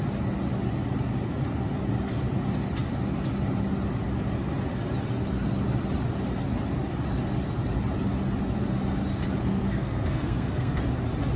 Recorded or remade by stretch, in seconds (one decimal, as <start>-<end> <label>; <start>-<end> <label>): 0.0-9.4 recorded; 9.4-10.8 remade; 10.8-11.4 recorded